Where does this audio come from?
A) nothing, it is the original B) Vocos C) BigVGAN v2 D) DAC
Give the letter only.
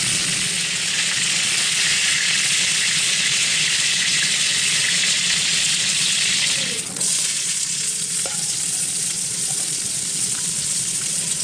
B